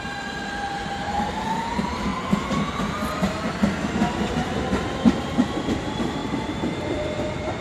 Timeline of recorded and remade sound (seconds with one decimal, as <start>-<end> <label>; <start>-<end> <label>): 0.0-2.1 remade; 2.1-5.6 recorded; 5.6-7.6 remade